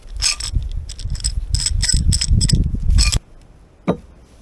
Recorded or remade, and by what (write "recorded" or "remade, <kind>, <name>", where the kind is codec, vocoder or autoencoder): recorded